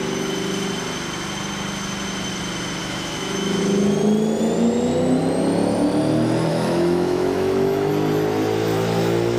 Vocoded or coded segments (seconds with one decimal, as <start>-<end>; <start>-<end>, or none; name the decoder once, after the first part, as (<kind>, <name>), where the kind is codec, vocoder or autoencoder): 2.8-3.6 (autoencoder, DAC-VAE); 6.5-7.9